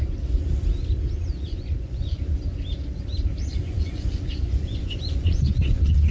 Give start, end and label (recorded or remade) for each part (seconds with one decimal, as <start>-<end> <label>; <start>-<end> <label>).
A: 0.0-1.3 recorded; 1.3-2.2 remade; 2.2-3.5 recorded; 3.5-6.1 remade